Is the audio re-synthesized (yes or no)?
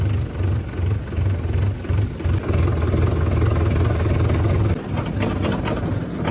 no